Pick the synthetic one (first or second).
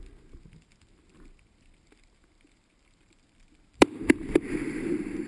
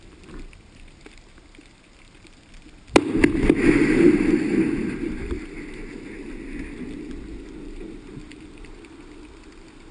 first